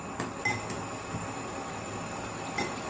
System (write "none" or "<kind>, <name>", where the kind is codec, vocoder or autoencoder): none